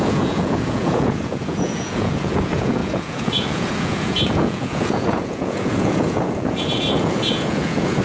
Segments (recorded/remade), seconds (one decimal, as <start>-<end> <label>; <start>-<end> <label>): 0.0-8.0 remade